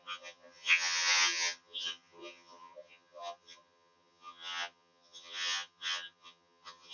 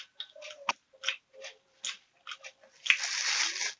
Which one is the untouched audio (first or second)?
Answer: second